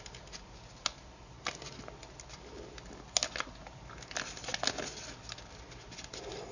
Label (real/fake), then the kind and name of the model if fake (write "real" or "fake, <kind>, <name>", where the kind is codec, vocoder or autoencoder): real